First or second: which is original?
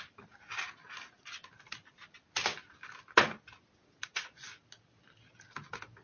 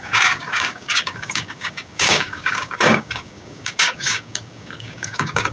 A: first